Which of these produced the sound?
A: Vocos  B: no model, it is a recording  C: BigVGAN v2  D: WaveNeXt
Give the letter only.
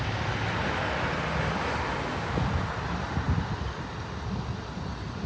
B